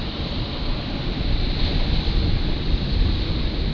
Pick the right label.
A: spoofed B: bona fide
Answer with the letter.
B